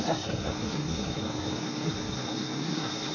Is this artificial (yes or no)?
yes